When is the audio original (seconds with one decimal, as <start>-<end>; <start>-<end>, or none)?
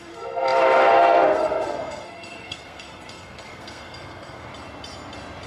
4.5-5.5